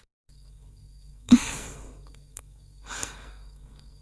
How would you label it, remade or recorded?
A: remade